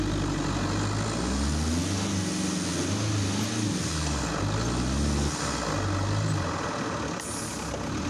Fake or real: real